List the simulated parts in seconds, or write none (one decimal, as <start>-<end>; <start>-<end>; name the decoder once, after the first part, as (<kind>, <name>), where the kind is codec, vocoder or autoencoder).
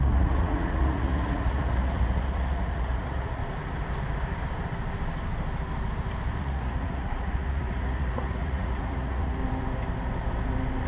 0.0-3.4 (vocoder, Vocos); 6.4-9.4